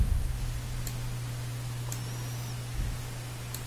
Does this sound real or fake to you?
real